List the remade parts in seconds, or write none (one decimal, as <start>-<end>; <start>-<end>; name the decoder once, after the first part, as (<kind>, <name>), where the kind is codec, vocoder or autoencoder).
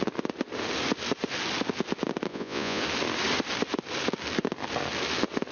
2.3-2.8 (vocoder, Vocos)